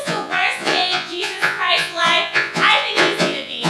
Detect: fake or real fake